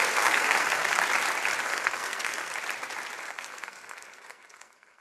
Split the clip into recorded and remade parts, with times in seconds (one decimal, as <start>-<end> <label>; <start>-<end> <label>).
0.0-1.0 remade; 1.0-1.6 recorded; 1.6-2.5 remade; 2.5-3.2 recorded; 3.2-5.0 remade